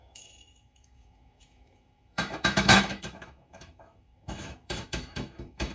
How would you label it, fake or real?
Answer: fake